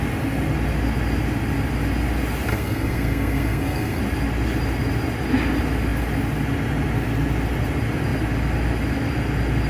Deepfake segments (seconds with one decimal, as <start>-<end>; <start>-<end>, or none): 2.5-4.0